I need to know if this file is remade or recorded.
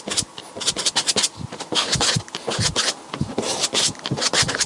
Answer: recorded